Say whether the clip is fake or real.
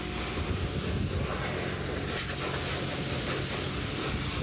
real